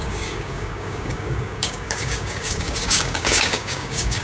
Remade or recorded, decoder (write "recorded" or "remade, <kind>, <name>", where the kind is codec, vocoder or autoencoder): remade, codec, DAC